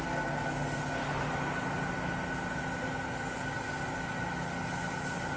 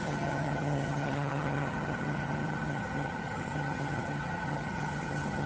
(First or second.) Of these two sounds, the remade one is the second